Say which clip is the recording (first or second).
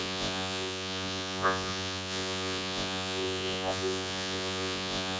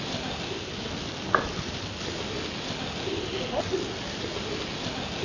second